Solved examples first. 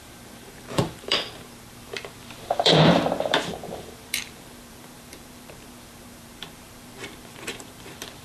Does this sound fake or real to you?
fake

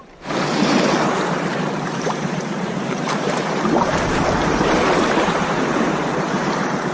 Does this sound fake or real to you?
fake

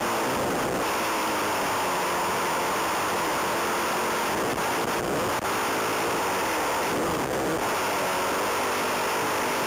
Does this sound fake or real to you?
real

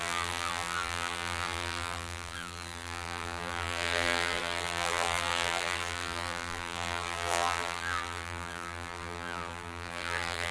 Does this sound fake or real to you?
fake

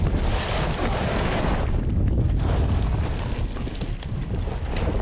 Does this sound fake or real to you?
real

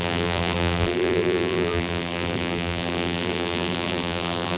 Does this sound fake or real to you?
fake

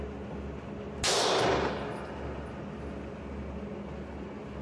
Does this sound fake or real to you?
real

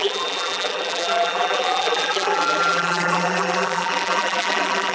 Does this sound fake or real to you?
fake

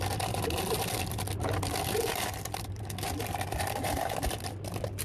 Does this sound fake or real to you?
real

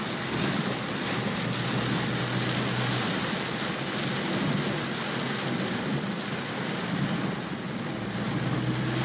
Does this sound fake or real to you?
real